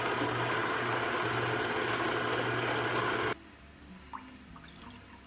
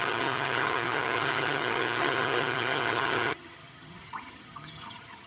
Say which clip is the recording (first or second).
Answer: first